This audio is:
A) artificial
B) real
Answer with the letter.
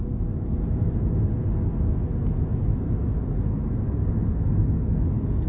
B